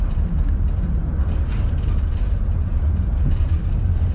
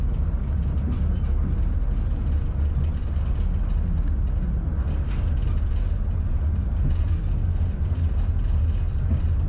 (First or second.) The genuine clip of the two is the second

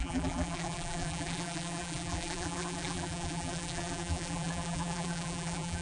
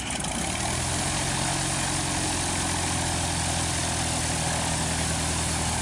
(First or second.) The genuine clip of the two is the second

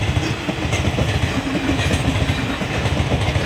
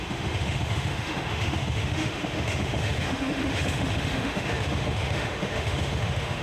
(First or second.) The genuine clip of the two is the first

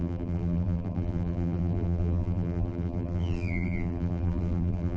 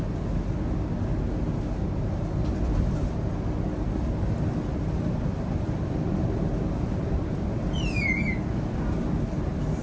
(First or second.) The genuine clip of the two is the second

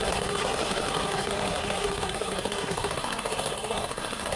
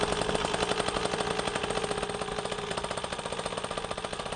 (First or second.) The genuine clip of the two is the second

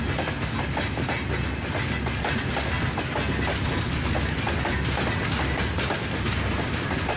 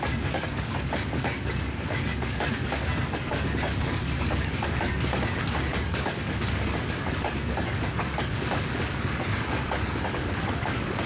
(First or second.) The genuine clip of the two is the first